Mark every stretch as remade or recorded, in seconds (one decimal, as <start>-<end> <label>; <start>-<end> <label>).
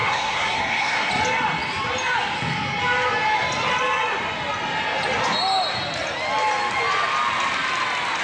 0.0-1.1 remade; 1.1-8.2 recorded